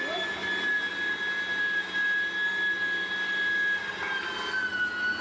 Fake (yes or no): no